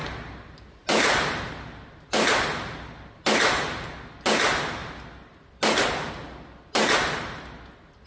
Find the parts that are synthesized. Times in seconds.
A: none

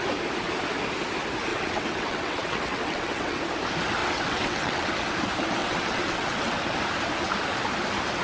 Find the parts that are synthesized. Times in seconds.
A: 1.5-3.4 (vocoder, WaveNeXt); 4.0-4.9; 5.6-6.6